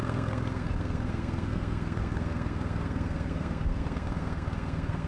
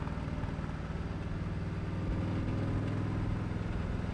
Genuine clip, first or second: second